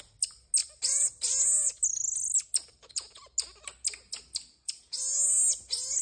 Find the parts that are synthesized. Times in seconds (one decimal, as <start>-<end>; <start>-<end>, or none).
none